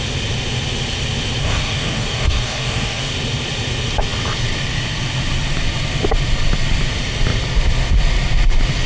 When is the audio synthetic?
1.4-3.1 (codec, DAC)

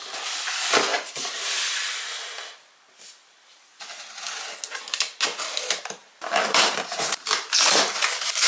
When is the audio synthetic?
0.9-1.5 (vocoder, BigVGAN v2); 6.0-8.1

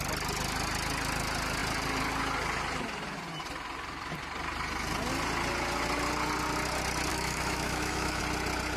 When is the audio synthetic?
7.1-8.2 (autoencoder, DAC-VAE)

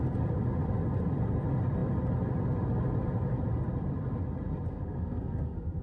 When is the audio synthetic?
4.7-5.8 (codec, SNAC)

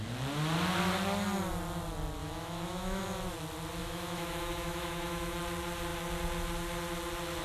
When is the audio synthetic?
2.2-3.0 (autoencoder, DAC-VAE); 3.8-5.4